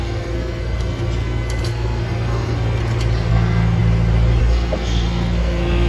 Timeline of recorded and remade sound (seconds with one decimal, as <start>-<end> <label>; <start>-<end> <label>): 0.0-2.8 remade; 2.8-3.3 recorded; 3.3-3.8 remade; 3.8-4.4 recorded; 4.4-5.9 remade

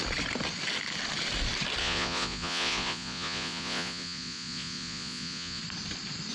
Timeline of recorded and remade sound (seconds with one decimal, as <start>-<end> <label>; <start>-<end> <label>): 0.0-1.8 recorded; 1.8-5.6 remade; 5.6-6.3 recorded

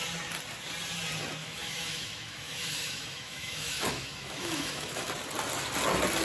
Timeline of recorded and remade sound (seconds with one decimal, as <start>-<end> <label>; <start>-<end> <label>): 0.0-1.4 recorded; 1.4-5.1 remade; 5.1-6.2 recorded

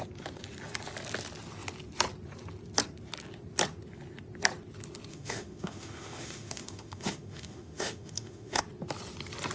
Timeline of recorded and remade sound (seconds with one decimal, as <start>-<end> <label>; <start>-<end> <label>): 0.0-5.1 recorded; 5.1-8.6 remade; 8.6-9.5 recorded

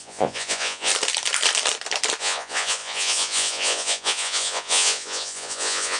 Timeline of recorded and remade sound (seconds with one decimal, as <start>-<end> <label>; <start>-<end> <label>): 0.0-0.9 remade; 0.9-2.2 recorded; 2.2-6.0 remade